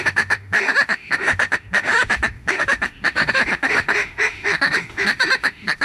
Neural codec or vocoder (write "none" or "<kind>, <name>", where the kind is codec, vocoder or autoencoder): autoencoder, DAC-VAE